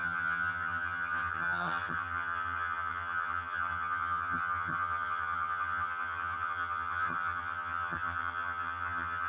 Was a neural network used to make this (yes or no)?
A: yes